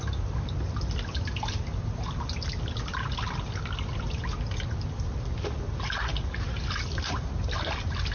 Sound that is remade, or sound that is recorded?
recorded